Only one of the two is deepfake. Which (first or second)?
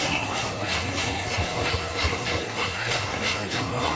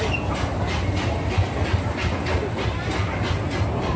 first